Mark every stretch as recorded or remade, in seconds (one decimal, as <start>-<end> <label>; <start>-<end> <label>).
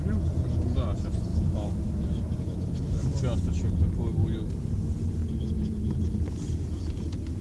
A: 0.0-1.3 recorded; 1.3-3.1 remade; 3.1-7.4 recorded